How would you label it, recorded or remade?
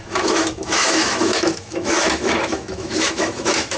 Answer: remade